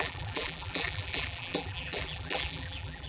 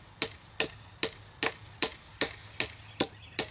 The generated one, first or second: first